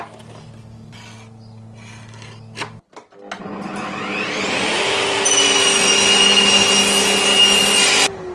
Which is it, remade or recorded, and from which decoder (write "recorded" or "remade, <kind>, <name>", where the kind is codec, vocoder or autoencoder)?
recorded